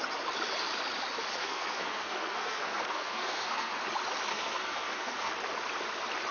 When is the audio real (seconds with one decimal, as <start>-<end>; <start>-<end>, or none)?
0.0-1.4; 3.7-4.3; 5.3-6.3

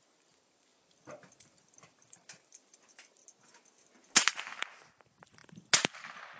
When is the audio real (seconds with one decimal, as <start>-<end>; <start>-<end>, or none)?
3.2-4.8; 5.4-6.4

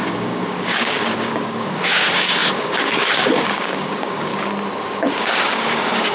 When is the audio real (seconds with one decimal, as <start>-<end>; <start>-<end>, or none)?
4.3-5.2

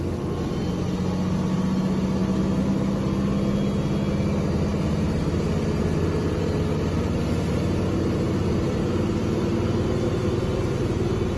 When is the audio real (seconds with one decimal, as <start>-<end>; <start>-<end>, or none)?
0.0-4.7; 7.1-11.4